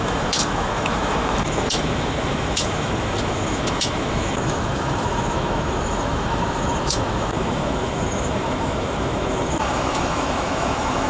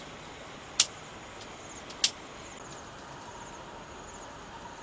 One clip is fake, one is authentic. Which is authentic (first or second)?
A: second